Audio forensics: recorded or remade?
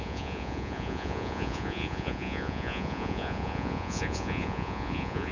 remade